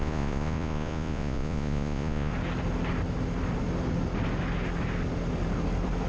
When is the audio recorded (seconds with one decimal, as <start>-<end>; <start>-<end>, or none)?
2.3-6.1